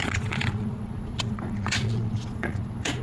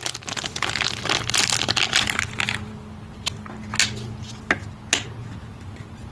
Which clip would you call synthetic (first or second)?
first